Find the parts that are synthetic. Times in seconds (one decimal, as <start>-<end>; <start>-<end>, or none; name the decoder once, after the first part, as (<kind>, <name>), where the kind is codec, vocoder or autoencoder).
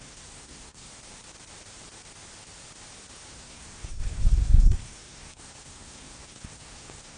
0.0-0.9 (codec, SNAC); 3.3-7.2